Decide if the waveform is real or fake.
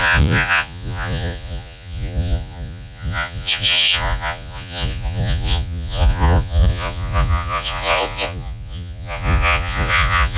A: fake